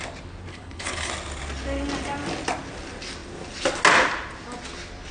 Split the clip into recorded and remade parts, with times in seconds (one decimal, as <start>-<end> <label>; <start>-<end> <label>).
0.0-0.5 recorded; 0.5-1.1 remade; 1.1-5.1 recorded